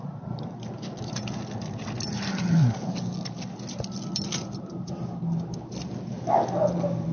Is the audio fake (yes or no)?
no